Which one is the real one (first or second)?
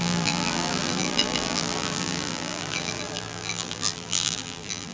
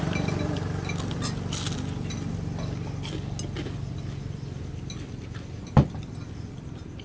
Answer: second